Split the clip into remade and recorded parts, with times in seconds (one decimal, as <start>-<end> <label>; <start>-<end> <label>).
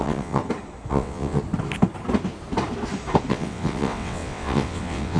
0.0-0.4 remade; 0.4-0.9 recorded; 0.9-1.4 remade; 1.4-3.3 recorded; 3.3-5.2 remade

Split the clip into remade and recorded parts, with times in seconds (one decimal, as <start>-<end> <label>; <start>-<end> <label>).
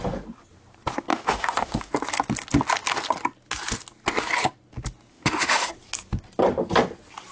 0.0-1.1 recorded; 1.1-1.9 remade; 1.9-5.1 recorded; 5.1-5.7 remade; 5.7-7.3 recorded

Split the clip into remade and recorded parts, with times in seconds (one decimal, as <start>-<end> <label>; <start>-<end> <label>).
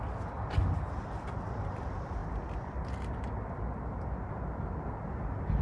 0.0-5.6 recorded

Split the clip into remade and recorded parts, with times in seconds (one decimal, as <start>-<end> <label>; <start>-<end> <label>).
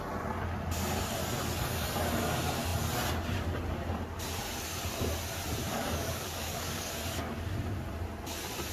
0.0-5.7 recorded; 5.7-6.9 remade; 6.9-8.7 recorded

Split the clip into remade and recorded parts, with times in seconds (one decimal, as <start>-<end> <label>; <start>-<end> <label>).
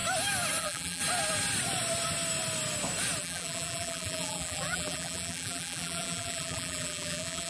0.0-0.6 recorded; 0.6-1.0 remade; 1.0-3.2 recorded; 3.2-7.5 remade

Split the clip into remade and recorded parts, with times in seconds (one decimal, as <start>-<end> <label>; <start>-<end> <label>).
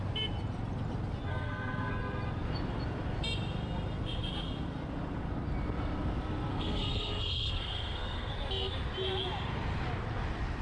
0.0-1.3 recorded; 1.3-1.9 remade; 1.9-6.5 recorded; 6.5-8.3 remade; 8.3-10.6 recorded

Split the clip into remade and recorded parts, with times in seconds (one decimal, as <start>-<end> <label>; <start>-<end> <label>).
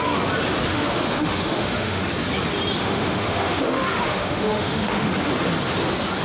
0.0-0.7 recorded; 0.7-2.0 remade; 2.0-2.8 recorded; 2.8-5.1 remade; 5.1-6.2 recorded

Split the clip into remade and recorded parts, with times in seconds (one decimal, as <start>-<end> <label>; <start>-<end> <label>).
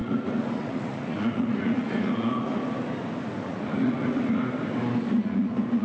0.0-2.6 remade; 2.6-3.4 recorded; 3.4-4.4 remade; 4.4-5.0 recorded; 5.0-5.8 remade